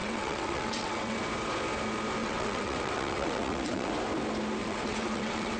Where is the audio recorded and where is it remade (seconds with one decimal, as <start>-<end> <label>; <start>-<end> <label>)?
0.0-1.2 remade; 1.2-2.2 recorded; 2.2-3.9 remade; 3.9-4.6 recorded; 4.6-5.6 remade